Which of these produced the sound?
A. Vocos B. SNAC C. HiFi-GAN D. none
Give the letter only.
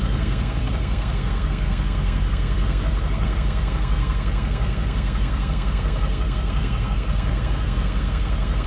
B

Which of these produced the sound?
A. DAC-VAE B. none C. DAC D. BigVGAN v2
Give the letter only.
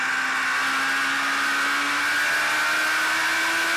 B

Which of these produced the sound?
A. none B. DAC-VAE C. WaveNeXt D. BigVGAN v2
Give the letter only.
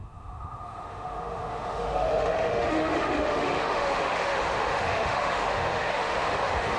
B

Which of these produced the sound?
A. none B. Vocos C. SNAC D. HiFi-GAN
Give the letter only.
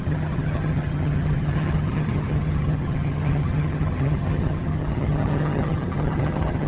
D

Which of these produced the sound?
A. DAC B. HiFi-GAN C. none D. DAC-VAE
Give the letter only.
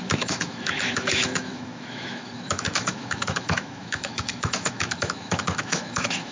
D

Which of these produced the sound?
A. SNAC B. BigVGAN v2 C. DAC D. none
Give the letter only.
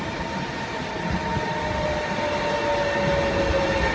D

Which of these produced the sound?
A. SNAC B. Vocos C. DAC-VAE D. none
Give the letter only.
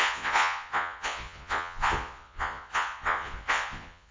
B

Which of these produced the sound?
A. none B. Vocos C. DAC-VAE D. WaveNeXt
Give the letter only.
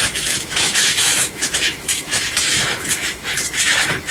C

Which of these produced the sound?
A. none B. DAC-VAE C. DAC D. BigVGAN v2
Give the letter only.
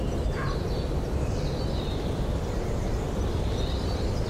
A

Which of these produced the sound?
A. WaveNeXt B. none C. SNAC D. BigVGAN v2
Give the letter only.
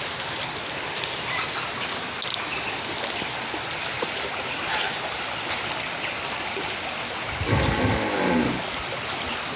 B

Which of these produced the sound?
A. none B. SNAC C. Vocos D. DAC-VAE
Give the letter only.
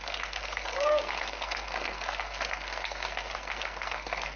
B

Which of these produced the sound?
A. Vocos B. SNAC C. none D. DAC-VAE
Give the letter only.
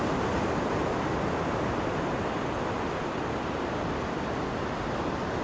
C